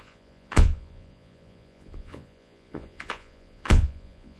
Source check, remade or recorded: remade